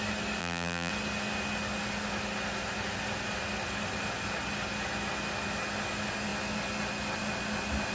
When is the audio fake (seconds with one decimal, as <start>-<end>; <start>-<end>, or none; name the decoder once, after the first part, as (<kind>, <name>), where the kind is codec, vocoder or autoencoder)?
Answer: 0.4-0.9 (vocoder, BigVGAN v2)